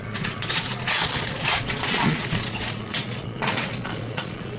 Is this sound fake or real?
fake